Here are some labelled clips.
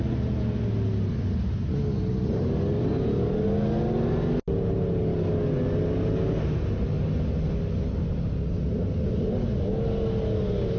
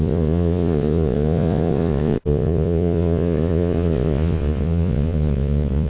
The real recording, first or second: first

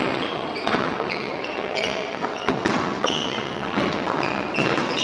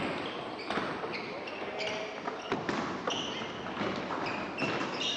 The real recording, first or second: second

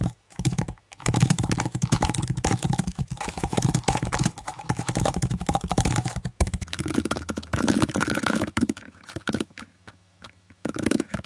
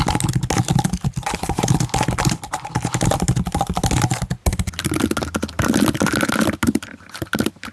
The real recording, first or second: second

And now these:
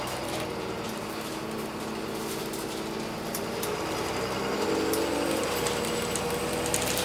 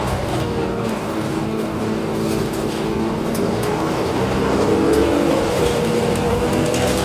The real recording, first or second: first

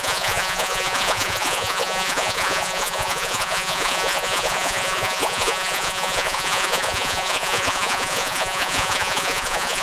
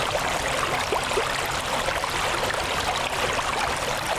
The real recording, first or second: second